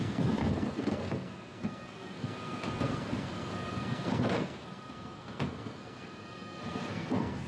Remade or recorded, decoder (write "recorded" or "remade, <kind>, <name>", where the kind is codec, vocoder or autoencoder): remade, codec, SNAC